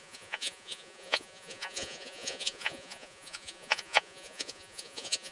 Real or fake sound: fake